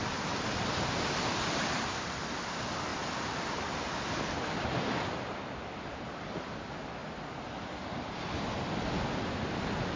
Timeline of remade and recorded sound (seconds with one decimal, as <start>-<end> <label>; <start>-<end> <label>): 0.0-10.0 recorded